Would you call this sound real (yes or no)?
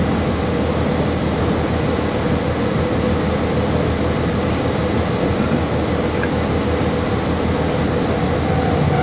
yes